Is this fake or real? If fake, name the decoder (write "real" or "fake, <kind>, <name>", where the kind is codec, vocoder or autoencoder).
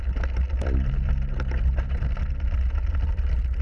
real